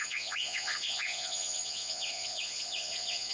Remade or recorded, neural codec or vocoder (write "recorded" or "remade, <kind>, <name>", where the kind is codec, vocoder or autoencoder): remade, vocoder, Vocos